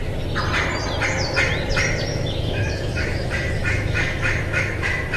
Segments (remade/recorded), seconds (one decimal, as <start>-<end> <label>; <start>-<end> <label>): 0.0-2.1 recorded; 2.1-5.2 remade